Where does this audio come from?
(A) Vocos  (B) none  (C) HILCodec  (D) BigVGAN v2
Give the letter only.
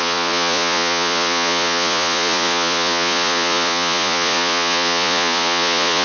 A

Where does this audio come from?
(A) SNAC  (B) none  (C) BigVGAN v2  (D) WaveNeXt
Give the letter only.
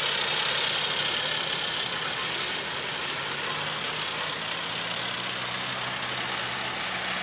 B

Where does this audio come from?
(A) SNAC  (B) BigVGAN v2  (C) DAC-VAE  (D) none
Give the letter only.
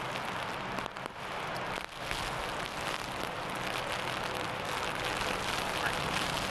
D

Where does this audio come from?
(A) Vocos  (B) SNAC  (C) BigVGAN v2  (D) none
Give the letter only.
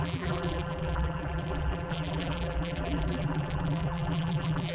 C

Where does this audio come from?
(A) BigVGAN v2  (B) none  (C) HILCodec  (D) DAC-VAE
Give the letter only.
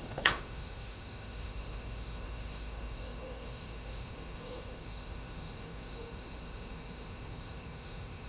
D